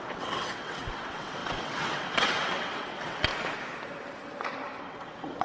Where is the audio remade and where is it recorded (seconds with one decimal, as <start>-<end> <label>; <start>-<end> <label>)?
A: 0.0-3.3 remade; 3.3-4.8 recorded; 4.8-5.4 remade